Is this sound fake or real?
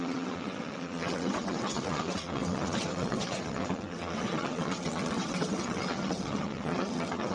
fake